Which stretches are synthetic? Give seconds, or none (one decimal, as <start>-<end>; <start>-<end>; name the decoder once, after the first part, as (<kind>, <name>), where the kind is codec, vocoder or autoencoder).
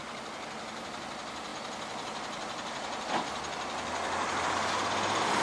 none